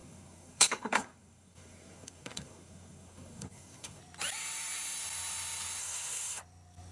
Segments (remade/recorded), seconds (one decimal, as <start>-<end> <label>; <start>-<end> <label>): 0.0-4.0 remade; 4.0-5.8 recorded; 5.8-6.4 remade; 6.4-6.9 recorded